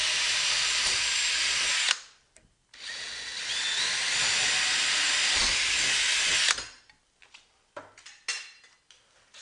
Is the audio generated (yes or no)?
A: no